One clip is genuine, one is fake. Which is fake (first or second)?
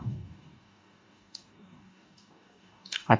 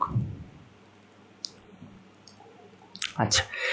first